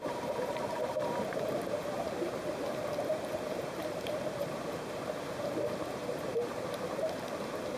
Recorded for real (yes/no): no